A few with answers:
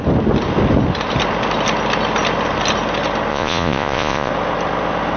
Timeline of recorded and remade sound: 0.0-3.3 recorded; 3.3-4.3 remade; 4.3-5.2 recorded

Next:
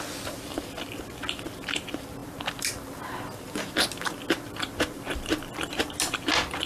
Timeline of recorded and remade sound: 0.0-6.7 recorded

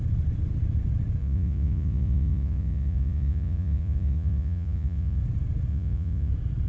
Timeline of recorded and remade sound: 0.0-1.2 recorded; 1.2-5.2 remade; 5.2-5.7 recorded; 5.7-6.3 remade; 6.3-6.7 recorded